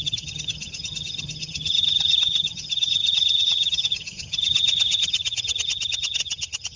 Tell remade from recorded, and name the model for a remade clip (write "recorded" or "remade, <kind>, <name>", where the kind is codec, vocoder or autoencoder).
remade, vocoder, HiFi-GAN